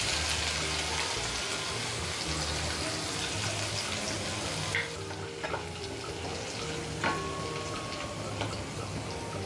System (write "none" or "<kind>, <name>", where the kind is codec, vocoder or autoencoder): none